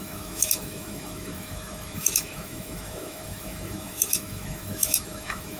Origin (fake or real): fake